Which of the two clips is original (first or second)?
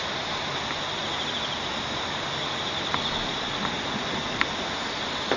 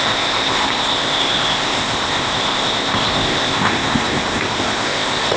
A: first